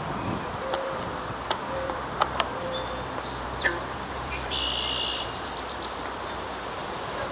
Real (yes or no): no